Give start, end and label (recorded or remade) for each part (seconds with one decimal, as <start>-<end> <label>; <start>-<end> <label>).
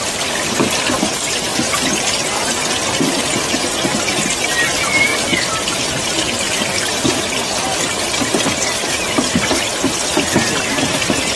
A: 0.0-5.1 recorded; 5.1-5.9 remade; 5.9-11.4 recorded